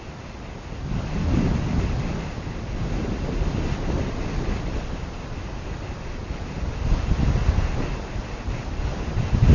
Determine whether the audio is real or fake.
real